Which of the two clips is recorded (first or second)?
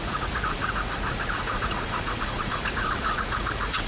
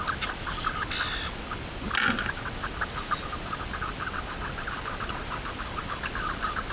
second